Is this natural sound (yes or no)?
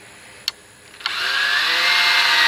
yes